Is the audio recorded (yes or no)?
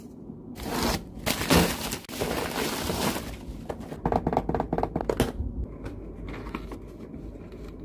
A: yes